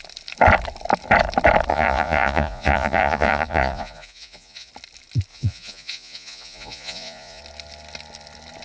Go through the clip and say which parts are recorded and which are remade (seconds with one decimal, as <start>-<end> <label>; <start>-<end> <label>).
0.0-1.7 recorded; 1.7-4.7 remade; 4.7-5.3 recorded; 5.3-7.4 remade; 7.4-8.6 recorded